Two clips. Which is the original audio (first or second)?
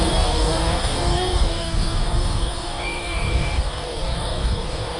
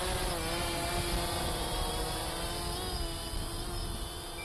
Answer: second